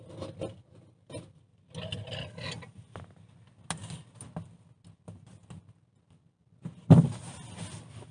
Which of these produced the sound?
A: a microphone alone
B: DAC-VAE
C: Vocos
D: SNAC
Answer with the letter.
A